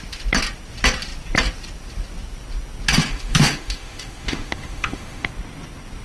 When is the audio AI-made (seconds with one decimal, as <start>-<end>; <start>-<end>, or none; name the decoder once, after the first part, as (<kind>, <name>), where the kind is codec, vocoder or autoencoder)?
3.1-5.3 (autoencoder, DAC-VAE)